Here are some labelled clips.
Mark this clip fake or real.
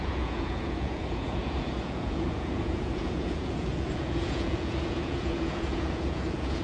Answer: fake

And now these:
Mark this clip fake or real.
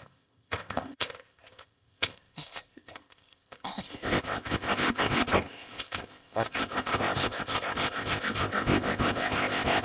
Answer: fake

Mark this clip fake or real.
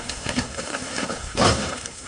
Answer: fake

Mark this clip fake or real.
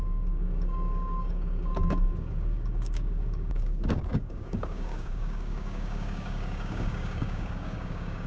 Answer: fake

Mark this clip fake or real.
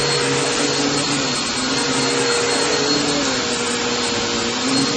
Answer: real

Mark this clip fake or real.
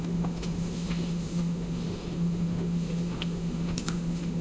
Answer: fake